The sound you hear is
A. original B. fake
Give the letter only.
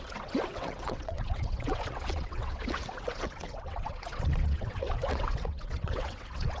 B